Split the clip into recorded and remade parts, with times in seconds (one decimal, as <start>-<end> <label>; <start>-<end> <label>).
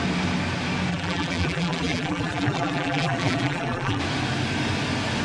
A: 0.0-0.9 recorded; 0.9-4.0 remade; 4.0-5.2 recorded